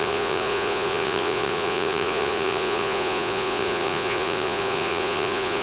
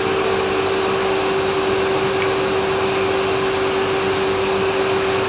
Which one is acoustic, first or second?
second